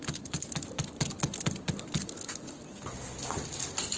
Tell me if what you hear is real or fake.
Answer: real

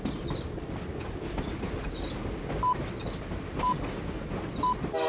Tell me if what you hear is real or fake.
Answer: real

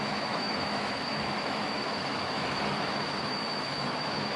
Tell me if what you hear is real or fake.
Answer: fake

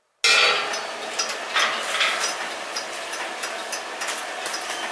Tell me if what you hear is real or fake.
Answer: real